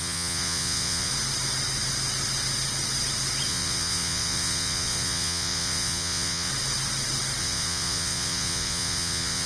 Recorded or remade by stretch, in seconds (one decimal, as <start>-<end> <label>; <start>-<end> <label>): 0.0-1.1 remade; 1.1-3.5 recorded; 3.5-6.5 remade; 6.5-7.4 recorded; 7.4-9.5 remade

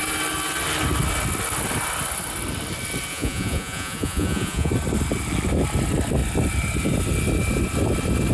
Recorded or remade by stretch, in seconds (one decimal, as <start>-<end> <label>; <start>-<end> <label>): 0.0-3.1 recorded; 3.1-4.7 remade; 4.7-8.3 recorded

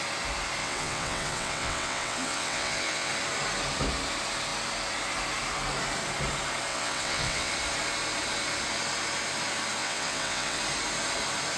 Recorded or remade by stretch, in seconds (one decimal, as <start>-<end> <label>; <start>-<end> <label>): 0.0-0.6 recorded; 0.6-3.1 remade; 3.1-6.7 recorded; 6.7-7.5 remade; 7.5-9.8 recorded; 9.8-10.6 remade; 10.6-11.6 recorded

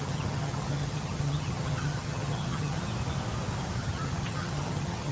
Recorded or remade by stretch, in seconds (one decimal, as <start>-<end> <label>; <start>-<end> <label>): 0.0-2.9 remade; 2.9-3.8 recorded; 3.8-5.1 remade

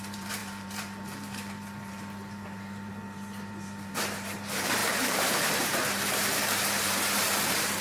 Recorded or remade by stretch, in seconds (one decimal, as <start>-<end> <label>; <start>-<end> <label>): 0.0-7.8 remade

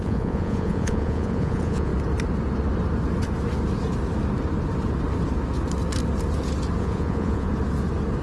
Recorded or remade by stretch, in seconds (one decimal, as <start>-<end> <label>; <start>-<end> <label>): 0.0-1.9 remade; 1.9-6.8 recorded; 6.8-7.5 remade; 7.5-8.2 recorded